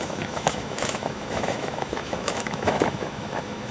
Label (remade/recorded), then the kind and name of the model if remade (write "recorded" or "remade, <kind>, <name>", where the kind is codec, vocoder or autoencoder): remade, autoencoder, DAC-VAE